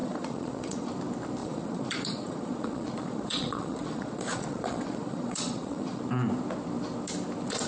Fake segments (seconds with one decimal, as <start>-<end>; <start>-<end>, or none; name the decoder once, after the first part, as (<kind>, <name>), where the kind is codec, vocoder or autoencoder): 0.0-0.9 (vocoder, Vocos); 1.4-6.0

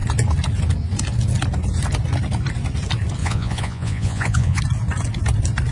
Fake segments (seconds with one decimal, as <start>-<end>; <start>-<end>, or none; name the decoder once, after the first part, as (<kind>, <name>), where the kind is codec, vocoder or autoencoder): 3.2-4.6 (vocoder, Vocos)

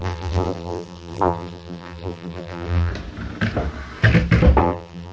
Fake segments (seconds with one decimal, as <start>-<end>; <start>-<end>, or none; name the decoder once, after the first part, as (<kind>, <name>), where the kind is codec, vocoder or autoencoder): 0.0-2.9 (vocoder, BigVGAN v2); 4.6-5.1

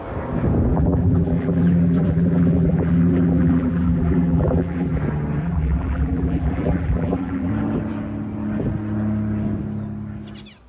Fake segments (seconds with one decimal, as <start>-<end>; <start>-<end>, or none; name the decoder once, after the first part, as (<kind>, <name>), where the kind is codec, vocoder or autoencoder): 0.7-5.0 (vocoder, BigVGAN v2); 5.4-7.5

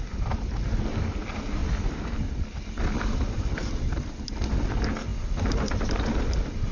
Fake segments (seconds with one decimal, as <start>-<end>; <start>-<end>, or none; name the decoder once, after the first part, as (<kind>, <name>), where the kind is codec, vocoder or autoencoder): none

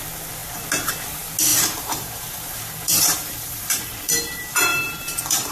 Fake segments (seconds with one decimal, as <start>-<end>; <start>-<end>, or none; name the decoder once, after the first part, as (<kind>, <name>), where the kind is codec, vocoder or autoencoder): 1.5-4.1 (vocoder, BigVGAN v2); 4.7-5.5

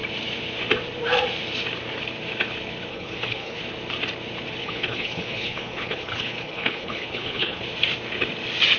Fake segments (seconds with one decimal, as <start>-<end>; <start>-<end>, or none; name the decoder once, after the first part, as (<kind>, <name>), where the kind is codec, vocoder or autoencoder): 2.9-3.6 (codec, HILCodec); 4.6-7.6

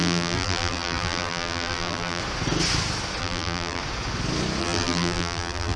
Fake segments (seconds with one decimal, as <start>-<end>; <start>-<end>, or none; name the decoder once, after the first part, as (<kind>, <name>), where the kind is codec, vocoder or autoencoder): 0.0-2.2 (vocoder, BigVGAN v2); 3.2-3.8; 4.6-5.8